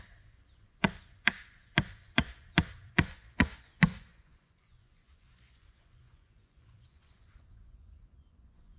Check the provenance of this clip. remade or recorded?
remade